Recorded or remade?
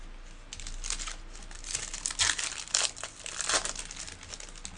recorded